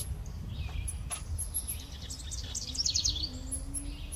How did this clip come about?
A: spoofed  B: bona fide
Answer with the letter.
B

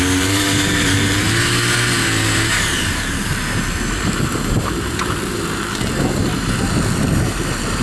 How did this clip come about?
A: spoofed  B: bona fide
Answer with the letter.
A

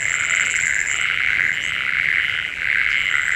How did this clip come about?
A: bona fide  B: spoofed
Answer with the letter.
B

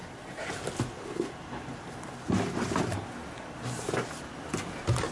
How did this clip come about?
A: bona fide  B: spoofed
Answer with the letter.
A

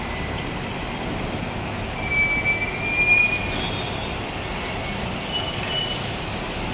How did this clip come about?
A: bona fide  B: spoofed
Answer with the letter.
A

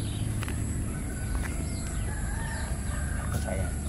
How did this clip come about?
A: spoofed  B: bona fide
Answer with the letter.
B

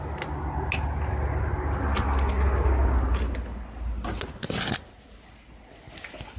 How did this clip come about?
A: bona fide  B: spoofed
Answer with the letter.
A